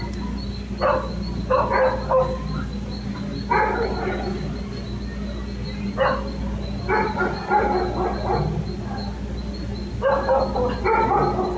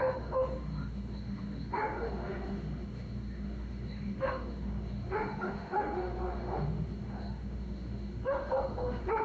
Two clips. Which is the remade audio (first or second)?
second